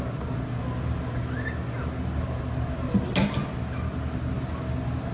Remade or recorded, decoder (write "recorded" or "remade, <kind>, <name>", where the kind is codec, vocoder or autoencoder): recorded